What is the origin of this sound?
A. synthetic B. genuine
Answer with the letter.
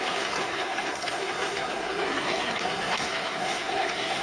A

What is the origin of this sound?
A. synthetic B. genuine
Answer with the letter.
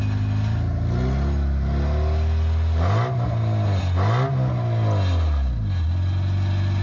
B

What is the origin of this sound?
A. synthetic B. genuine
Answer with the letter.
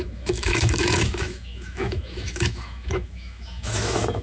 A